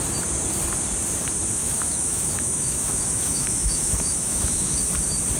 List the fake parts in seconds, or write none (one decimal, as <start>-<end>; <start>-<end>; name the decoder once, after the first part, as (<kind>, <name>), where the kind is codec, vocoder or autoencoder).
1.6-4.8 (autoencoder, DAC-VAE)